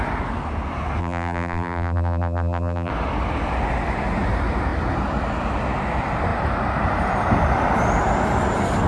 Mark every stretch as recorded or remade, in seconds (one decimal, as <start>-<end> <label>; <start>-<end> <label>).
0.0-1.0 recorded; 1.0-2.9 remade; 2.9-8.9 recorded

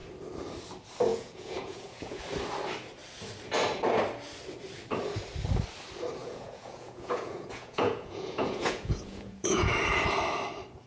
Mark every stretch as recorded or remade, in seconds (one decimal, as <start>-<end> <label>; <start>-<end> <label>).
0.0-1.1 recorded; 1.1-2.2 remade; 2.2-6.2 recorded; 6.2-9.7 remade; 9.7-10.9 recorded